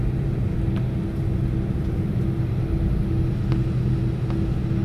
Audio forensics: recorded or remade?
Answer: recorded